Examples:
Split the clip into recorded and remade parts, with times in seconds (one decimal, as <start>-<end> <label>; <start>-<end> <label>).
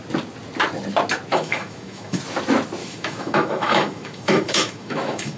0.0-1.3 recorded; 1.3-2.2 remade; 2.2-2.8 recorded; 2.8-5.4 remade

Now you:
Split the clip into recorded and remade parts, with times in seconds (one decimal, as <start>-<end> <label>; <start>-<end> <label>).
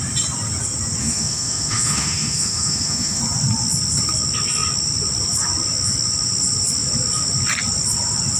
0.0-1.0 recorded; 1.0-3.2 remade; 3.2-8.4 recorded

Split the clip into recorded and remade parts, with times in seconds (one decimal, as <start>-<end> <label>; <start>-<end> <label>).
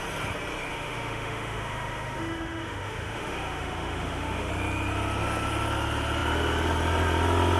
0.0-0.7 recorded; 0.7-4.5 remade; 4.5-7.6 recorded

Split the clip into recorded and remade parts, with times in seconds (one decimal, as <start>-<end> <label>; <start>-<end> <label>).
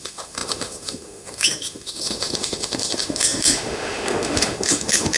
0.0-5.2 remade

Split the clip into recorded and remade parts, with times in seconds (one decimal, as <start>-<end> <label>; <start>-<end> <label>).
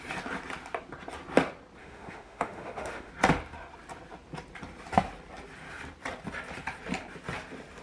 0.0-1.8 recorded; 1.8-3.1 remade; 3.1-7.8 recorded